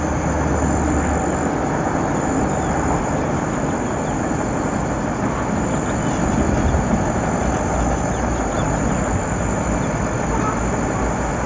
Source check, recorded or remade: recorded